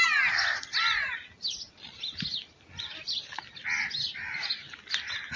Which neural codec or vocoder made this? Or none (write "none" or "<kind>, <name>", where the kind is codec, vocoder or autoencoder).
none